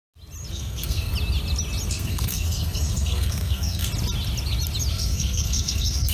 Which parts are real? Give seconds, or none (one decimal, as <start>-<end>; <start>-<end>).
0.0-0.5; 1.1-1.9; 3.9-4.9